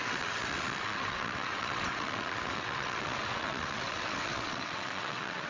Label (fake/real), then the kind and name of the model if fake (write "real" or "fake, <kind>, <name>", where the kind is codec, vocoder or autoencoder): fake, vocoder, WaveNeXt